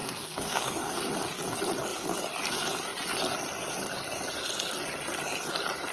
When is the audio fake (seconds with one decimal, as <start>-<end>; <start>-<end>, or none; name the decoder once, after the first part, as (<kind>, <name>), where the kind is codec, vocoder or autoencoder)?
0.0-1.0 (codec, SNAC)

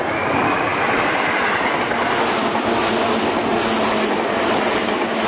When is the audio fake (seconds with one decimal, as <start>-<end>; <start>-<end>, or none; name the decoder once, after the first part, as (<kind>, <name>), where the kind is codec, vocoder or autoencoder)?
none

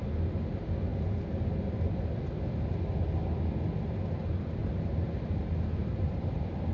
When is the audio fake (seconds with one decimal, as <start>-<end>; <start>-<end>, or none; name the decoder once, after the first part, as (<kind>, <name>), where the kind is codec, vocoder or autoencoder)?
4.6-5.3 (vocoder, BigVGAN v2); 5.8-6.7

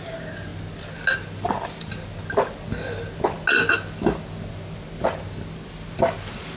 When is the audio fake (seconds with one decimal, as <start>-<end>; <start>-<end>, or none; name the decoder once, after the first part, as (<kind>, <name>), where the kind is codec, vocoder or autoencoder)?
none

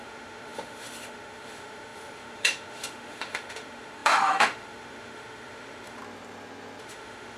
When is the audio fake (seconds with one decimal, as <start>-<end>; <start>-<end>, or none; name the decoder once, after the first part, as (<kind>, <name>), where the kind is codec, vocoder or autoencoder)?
0.0-6.0 (autoencoder, DAC-VAE); 6.8-7.4

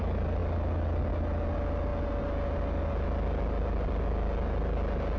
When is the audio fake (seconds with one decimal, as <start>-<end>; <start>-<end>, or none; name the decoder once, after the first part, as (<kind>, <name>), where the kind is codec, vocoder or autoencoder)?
none